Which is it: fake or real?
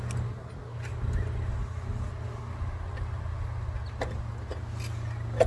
real